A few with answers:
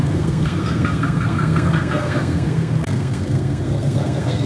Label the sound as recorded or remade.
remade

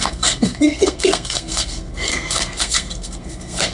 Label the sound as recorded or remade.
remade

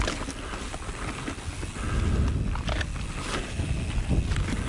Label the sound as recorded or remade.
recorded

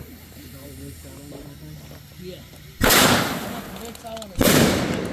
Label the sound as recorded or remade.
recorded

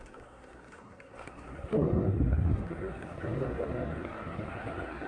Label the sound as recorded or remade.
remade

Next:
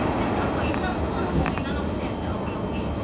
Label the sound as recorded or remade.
recorded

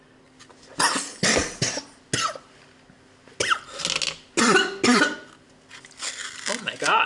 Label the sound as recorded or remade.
recorded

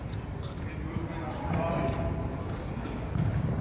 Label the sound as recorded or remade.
recorded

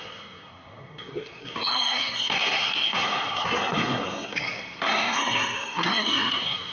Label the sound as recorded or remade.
remade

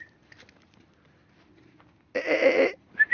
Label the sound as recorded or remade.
recorded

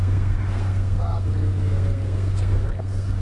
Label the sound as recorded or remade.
remade